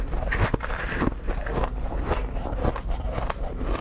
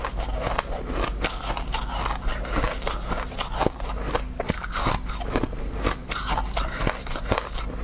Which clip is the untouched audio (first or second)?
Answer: second